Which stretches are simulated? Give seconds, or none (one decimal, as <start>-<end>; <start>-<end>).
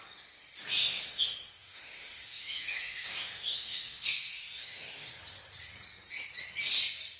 0.8-5.1